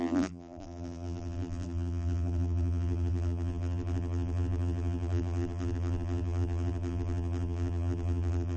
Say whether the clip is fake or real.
fake